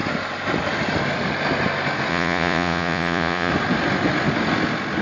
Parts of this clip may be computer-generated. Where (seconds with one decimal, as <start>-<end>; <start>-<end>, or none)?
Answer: 2.1-3.5